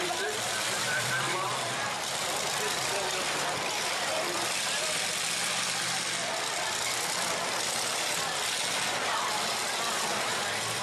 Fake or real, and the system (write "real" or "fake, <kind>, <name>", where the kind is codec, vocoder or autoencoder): fake, vocoder, BigVGAN v2